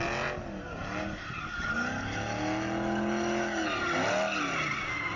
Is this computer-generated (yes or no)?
no